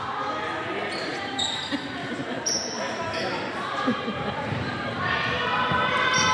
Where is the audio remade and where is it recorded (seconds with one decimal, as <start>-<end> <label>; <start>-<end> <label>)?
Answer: 0.0-1.1 recorded; 1.1-4.9 remade; 4.9-6.3 recorded